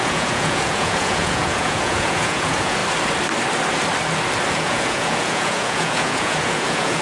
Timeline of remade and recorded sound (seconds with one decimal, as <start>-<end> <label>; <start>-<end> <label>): 0.0-2.8 remade; 2.8-4.5 recorded; 4.5-7.0 remade